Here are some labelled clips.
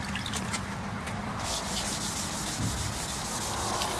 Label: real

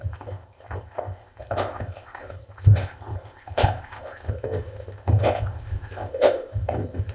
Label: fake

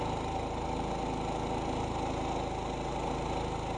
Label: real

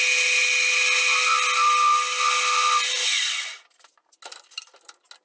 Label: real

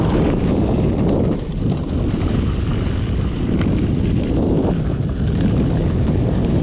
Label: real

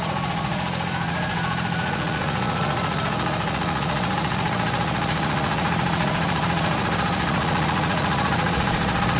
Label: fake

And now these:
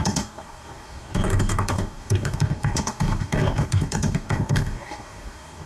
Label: fake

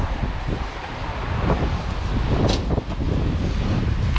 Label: real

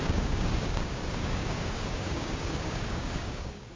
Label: fake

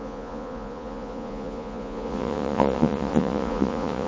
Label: fake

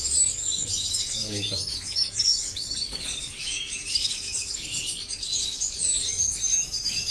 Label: fake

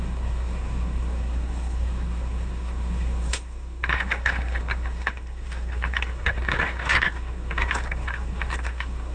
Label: fake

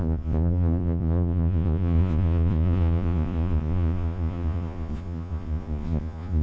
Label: fake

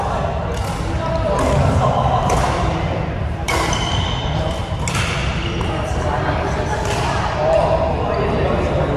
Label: real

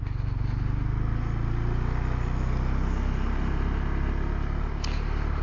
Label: real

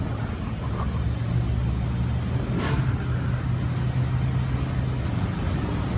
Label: real